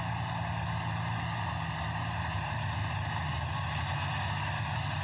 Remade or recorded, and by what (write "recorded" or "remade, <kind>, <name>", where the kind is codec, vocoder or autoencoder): recorded